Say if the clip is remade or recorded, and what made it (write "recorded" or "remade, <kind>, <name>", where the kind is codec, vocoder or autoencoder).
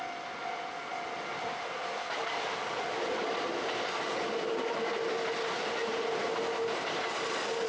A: recorded